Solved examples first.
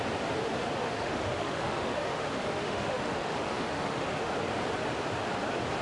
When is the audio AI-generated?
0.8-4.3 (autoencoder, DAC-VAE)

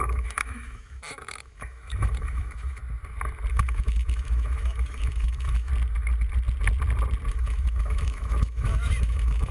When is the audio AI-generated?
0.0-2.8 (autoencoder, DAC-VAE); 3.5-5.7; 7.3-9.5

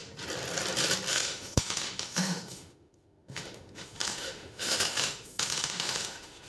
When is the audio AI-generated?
1.1-6.5 (autoencoder, DAC-VAE)